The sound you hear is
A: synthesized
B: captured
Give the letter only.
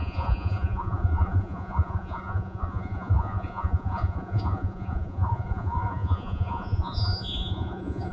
A